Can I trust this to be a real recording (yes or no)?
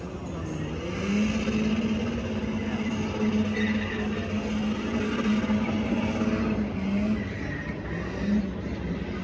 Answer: yes